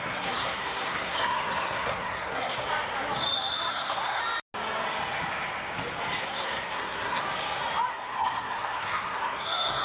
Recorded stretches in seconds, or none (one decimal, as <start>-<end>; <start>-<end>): 2.6-3.7; 4.2-6.2; 7.2-7.9